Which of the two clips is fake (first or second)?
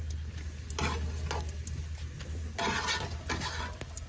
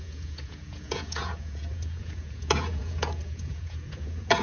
second